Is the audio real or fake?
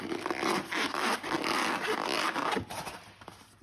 real